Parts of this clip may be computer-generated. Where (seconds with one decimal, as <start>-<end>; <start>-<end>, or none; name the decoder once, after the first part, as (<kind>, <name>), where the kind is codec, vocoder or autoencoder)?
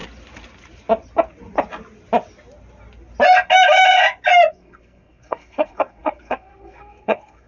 4.5-7.5 (codec, SNAC)